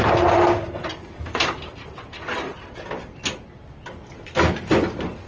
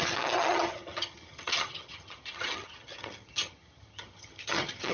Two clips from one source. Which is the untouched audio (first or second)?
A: first